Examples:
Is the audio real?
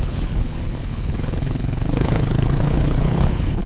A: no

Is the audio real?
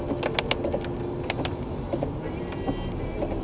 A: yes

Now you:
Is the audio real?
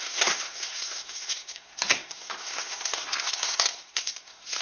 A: no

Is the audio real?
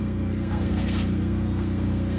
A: no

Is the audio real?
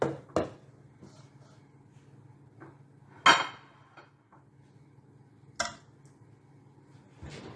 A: yes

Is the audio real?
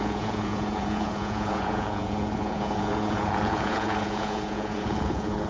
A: no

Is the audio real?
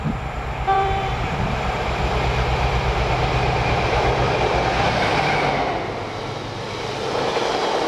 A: no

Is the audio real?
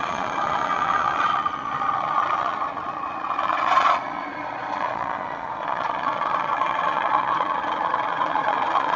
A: no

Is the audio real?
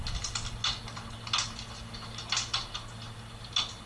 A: yes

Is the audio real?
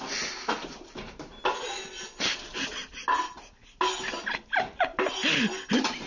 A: yes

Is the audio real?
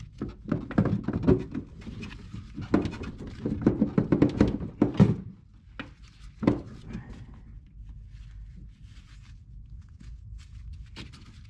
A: yes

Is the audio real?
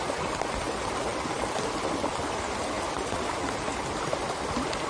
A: yes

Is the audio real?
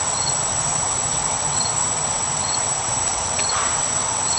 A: no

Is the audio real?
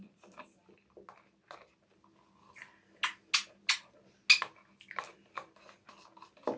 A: yes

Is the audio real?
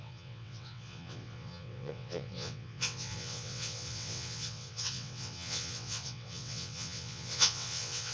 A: no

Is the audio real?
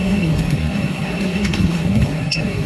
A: no